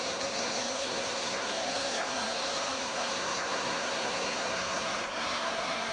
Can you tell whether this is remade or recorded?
remade